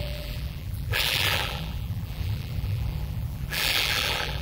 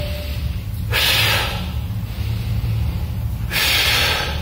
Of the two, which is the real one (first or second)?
second